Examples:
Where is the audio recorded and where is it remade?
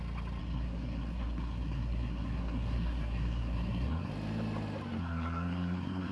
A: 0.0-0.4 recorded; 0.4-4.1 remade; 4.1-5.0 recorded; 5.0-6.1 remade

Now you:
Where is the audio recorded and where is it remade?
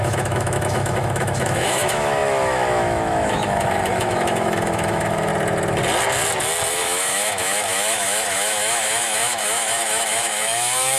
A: 0.0-5.3 remade; 5.3-6.7 recorded; 6.7-11.0 remade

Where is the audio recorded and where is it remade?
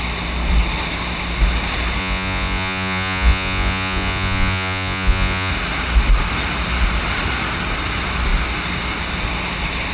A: 0.0-2.0 recorded; 2.0-5.5 remade; 5.5-9.9 recorded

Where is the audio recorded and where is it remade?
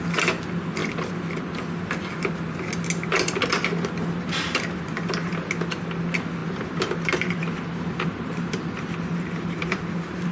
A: 0.0-6.4 recorded; 6.4-10.3 remade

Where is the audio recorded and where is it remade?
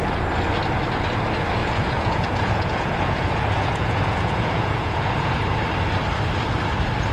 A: 0.0-1.6 recorded; 1.6-5.3 remade; 5.3-7.1 recorded